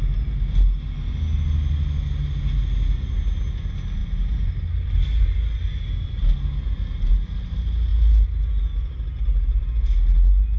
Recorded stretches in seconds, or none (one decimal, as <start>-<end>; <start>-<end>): 0.0-10.6